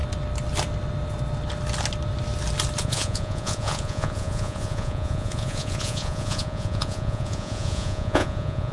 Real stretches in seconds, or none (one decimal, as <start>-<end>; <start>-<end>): 0.0-2.8